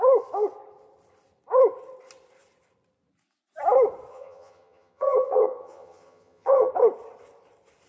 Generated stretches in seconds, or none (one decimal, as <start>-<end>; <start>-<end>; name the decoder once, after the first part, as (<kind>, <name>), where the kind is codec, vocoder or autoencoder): 4.1-6.7 (vocoder, HiFi-GAN)